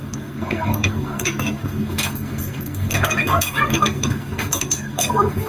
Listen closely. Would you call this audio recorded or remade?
remade